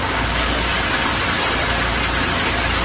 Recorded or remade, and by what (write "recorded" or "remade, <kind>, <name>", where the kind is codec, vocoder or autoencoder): remade, vocoder, BigVGAN v2